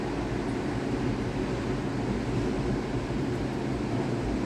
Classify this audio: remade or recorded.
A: recorded